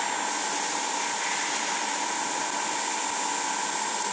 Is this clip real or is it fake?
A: real